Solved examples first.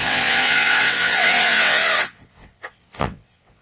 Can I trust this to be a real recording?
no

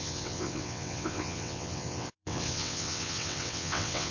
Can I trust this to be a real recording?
no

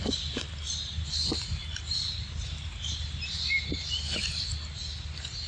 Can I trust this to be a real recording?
yes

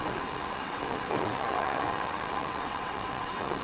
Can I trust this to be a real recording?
no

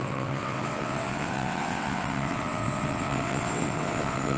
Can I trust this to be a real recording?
no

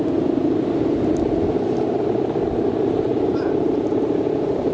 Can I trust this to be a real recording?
yes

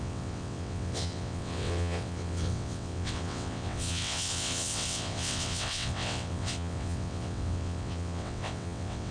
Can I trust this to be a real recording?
no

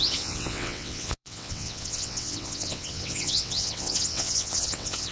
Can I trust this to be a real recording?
no